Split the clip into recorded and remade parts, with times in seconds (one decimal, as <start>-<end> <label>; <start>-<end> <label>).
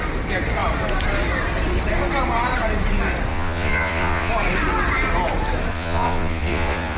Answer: 0.0-3.3 recorded; 3.3-4.3 remade; 4.3-5.7 recorded; 5.7-7.0 remade